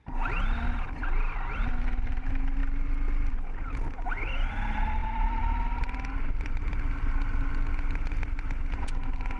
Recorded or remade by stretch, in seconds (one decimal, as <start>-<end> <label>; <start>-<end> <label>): 0.0-9.4 recorded